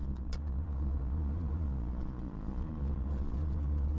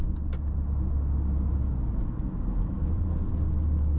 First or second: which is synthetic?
first